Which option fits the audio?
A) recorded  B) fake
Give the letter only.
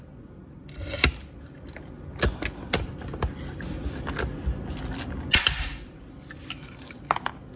A